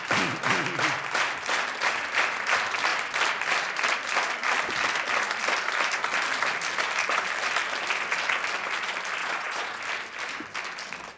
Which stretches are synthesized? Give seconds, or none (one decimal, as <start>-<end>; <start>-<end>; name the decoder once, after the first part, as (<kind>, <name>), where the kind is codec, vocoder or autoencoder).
9.2-9.8 (vocoder, Vocos)